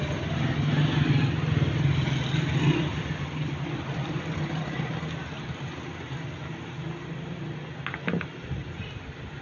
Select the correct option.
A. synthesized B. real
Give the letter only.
B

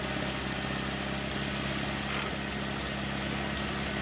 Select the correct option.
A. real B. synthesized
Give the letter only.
A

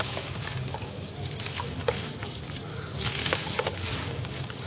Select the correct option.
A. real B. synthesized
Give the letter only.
B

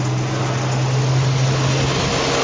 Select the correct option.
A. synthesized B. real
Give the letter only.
B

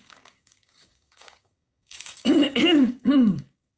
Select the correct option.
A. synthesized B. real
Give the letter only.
A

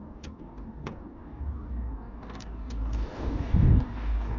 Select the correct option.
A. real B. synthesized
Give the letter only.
B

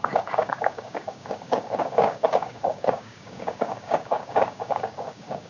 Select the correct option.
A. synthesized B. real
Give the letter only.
A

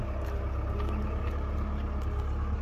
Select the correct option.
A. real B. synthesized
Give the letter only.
A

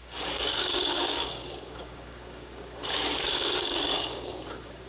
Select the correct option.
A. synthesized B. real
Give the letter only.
A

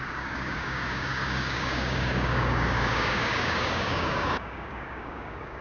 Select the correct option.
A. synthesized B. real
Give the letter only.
A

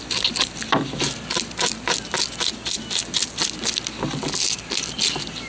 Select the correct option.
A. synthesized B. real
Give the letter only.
B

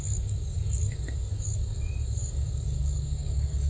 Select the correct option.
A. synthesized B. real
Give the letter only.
A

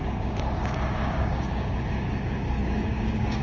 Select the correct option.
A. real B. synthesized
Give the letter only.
B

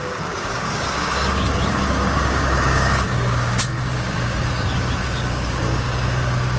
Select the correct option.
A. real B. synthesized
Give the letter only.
B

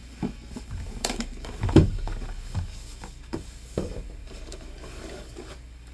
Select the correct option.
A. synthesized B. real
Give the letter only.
A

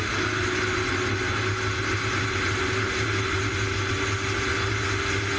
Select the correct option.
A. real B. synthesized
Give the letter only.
A